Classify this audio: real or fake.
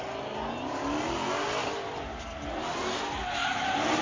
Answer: real